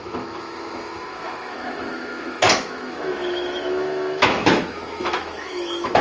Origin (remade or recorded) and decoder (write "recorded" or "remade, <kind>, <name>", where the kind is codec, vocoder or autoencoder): remade, autoencoder, DAC-VAE